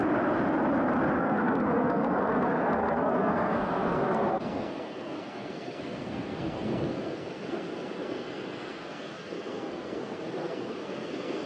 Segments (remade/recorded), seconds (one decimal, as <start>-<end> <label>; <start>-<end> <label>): 0.0-1.2 recorded; 1.2-11.5 remade